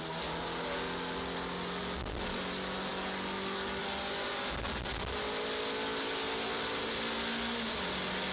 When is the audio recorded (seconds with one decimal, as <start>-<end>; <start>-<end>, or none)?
0.0-2.9; 3.8-8.3